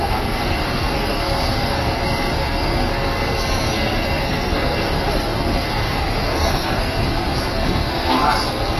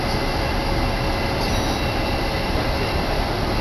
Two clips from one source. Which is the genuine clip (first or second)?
second